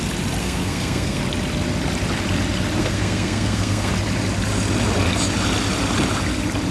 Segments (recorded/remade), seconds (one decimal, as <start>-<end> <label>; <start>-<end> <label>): 0.0-0.4 recorded; 0.4-1.2 remade; 1.2-2.8 recorded; 2.8-3.9 remade; 3.9-6.7 recorded

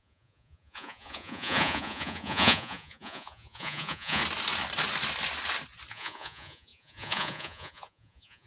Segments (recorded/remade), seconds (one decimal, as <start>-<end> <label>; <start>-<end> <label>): 0.0-4.2 remade; 4.2-5.9 recorded; 5.9-8.5 remade

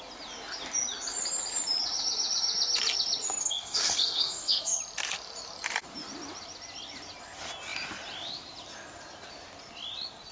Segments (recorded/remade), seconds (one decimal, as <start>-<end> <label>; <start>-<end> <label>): 0.0-3.4 recorded; 3.4-4.8 remade; 4.8-10.3 recorded

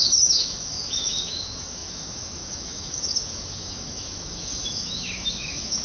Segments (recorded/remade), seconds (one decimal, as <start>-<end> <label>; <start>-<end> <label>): 0.0-5.8 remade

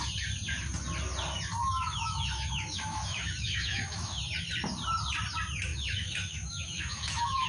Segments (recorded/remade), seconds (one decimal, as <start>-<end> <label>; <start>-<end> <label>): 0.0-1.6 recorded; 1.6-4.2 remade; 4.2-5.7 recorded; 5.7-7.5 remade

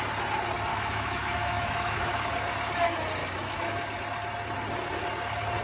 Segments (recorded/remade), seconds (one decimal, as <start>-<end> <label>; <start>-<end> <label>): 0.0-0.7 recorded; 0.7-2.3 remade; 2.3-3.2 recorded; 3.2-3.7 remade; 3.7-5.6 recorded

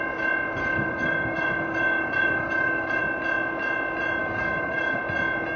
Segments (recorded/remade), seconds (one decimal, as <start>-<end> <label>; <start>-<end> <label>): 0.0-0.6 recorded; 0.6-3.0 remade; 3.0-4.2 recorded; 4.2-5.0 remade; 5.0-5.6 recorded